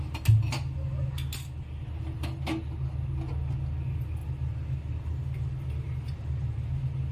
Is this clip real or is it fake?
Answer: real